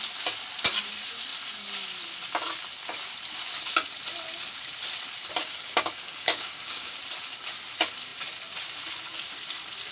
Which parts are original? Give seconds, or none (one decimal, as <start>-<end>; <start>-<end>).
0.0-5.4; 7.0-9.9